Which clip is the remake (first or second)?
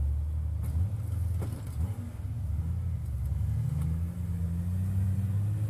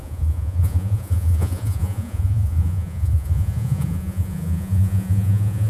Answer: second